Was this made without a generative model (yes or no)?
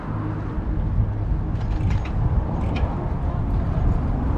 yes